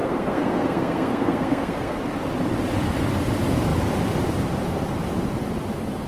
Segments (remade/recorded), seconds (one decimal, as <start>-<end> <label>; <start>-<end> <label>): 0.0-2.0 remade; 2.0-6.1 recorded